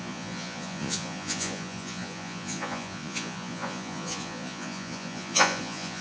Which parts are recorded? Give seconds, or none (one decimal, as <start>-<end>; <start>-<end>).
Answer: none

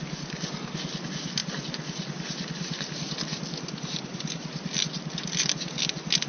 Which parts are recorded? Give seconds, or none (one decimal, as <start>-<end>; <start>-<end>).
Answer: 0.0-1.4; 5.1-6.3